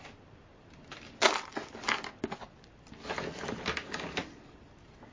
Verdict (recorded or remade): recorded